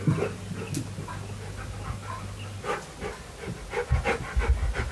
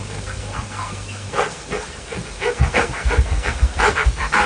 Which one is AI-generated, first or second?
second